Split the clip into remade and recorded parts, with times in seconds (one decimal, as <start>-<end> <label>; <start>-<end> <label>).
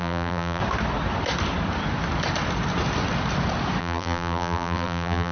0.0-0.6 remade; 0.6-3.8 recorded; 3.8-5.3 remade